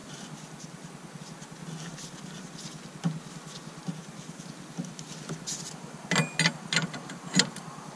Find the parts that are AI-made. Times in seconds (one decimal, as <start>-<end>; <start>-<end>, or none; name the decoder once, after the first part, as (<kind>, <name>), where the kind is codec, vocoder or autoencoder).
none